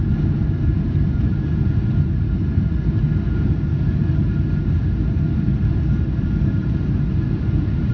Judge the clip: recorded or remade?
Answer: recorded